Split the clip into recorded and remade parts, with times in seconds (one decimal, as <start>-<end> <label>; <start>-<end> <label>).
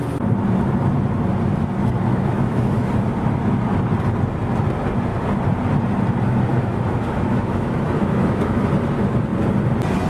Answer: 0.0-2.1 recorded; 2.1-2.9 remade; 2.9-6.5 recorded; 6.5-8.6 remade; 8.6-10.1 recorded